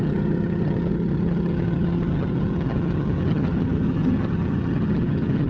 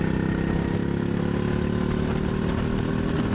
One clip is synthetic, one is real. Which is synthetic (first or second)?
first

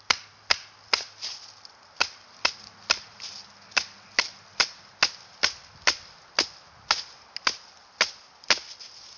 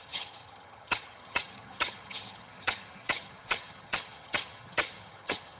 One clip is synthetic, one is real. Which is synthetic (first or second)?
second